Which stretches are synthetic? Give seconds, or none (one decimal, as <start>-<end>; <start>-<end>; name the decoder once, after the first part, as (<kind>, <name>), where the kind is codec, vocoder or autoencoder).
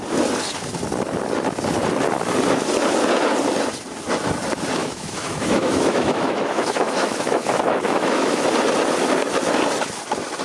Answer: 4.8-8.4 (autoencoder, DAC-VAE)